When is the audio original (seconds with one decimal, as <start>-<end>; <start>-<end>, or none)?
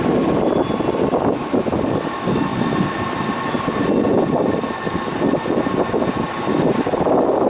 0.0-7.5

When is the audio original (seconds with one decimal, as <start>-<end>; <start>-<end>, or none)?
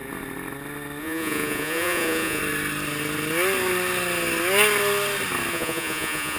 0.0-1.0; 2.4-5.5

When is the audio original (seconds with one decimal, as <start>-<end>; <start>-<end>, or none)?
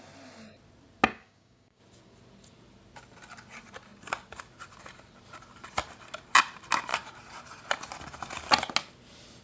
0.0-1.1; 1.8-9.4